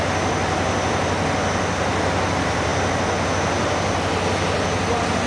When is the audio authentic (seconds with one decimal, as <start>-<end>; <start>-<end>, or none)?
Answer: 0.0-5.3